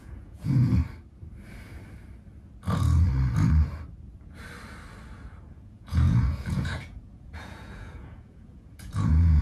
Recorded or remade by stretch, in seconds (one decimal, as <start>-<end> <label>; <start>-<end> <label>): 0.0-0.7 remade; 0.7-5.5 recorded; 5.5-9.4 remade